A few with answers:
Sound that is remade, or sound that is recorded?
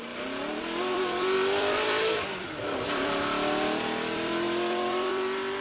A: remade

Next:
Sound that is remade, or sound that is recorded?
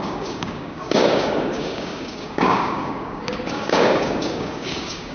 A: remade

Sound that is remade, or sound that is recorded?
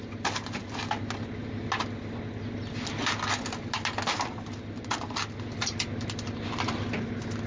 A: recorded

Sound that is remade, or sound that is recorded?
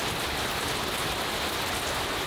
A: recorded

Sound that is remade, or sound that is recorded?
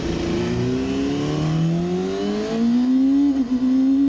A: recorded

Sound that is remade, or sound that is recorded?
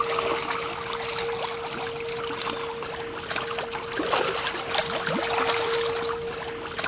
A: recorded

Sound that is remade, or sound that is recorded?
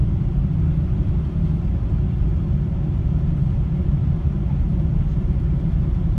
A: recorded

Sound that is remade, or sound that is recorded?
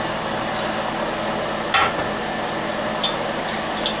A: recorded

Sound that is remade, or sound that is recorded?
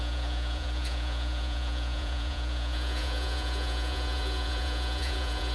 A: remade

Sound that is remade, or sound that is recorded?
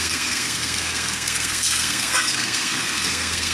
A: remade